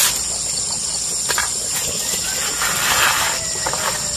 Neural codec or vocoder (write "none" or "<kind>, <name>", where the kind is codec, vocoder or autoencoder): none